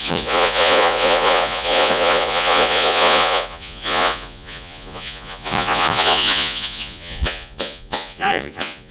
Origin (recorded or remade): remade